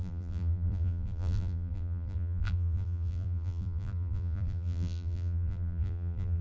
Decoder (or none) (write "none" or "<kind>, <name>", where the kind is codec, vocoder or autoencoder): vocoder, BigVGAN v2